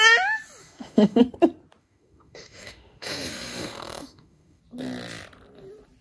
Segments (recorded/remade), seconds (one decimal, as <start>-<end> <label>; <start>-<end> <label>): 0.0-0.6 recorded; 0.6-1.2 remade; 1.2-1.8 recorded; 1.8-4.6 remade; 4.6-6.0 recorded

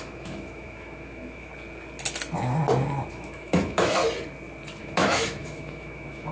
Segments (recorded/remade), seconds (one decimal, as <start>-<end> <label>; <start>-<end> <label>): 0.0-1.5 remade; 1.5-3.1 recorded; 3.1-4.0 remade; 4.0-4.8 recorded; 4.8-6.3 remade

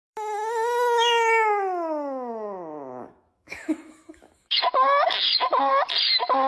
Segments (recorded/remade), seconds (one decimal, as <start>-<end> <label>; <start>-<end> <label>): 0.0-5.7 remade; 5.7-6.5 recorded

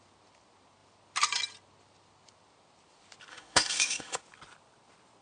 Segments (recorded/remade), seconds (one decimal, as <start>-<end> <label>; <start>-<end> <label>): 0.0-3.3 recorded; 3.3-4.2 remade; 4.2-5.2 recorded

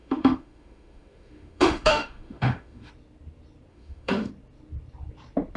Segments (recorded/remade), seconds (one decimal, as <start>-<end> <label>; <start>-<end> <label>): 0.0-2.9 remade; 2.9-3.7 recorded; 3.7-4.3 remade; 4.3-5.6 recorded

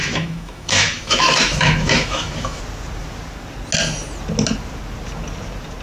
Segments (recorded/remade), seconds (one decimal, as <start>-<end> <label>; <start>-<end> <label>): 0.0-2.6 remade; 2.6-5.8 recorded